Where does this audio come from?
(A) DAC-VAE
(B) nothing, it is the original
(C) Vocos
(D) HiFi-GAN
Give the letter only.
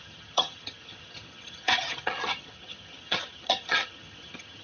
D